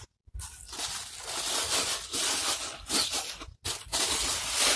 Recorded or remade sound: recorded